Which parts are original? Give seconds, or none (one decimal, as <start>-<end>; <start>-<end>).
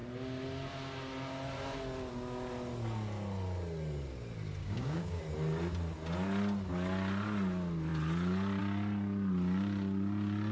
0.0-4.6; 5.2-10.5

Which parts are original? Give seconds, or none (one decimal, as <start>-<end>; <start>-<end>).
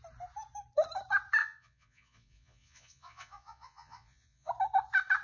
0.0-1.4; 4.5-5.2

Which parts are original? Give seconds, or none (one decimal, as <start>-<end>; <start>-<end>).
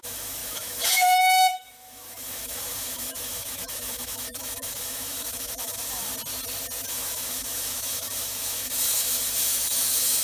6.1-6.9